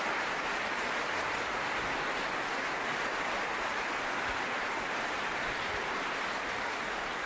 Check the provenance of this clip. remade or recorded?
remade